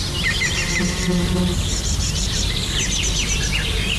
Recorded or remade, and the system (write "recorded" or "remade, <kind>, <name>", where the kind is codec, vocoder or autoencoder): remade, vocoder, BigVGAN v2